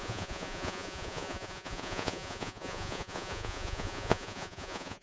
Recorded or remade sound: remade